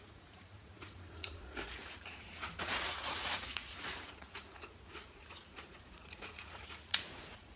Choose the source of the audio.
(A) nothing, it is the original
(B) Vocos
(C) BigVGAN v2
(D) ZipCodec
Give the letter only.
B